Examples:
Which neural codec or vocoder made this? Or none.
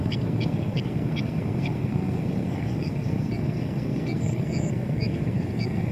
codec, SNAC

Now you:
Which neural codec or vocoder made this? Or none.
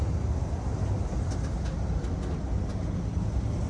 none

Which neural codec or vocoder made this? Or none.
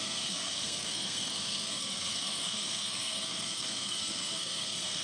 codec, SNAC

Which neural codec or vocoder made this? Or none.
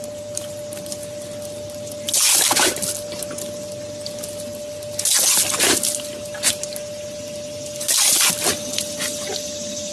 none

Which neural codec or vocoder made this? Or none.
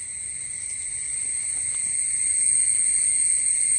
none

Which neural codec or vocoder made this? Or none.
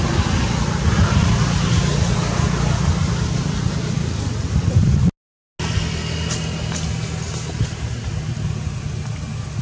none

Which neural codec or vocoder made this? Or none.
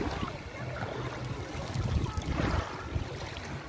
none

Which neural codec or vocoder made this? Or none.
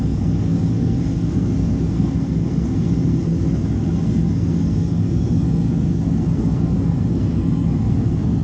codec, SNAC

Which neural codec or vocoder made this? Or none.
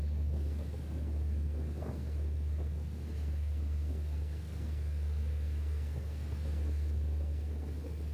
codec, SNAC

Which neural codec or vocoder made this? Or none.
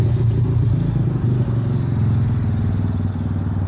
none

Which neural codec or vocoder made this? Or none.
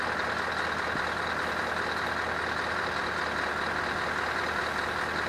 none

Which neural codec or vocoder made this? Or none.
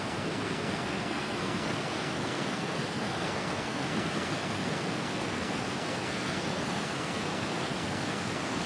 codec, SNAC